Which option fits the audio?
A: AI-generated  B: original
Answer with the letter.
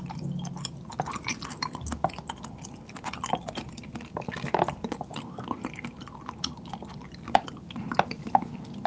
B